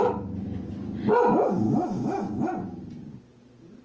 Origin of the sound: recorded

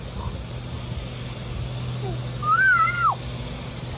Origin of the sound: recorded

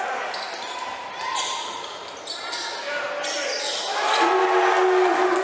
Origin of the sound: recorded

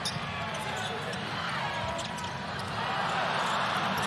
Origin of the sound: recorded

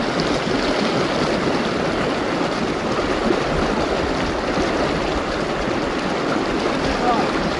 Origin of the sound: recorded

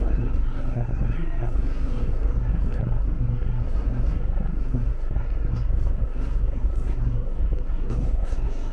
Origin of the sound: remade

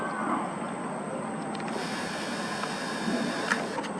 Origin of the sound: recorded